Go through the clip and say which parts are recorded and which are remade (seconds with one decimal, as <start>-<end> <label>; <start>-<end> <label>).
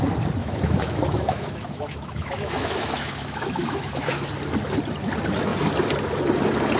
0.0-0.4 recorded; 0.4-4.3 remade; 4.3-6.8 recorded